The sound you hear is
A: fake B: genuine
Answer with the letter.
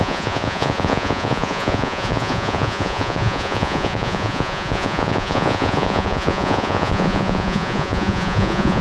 A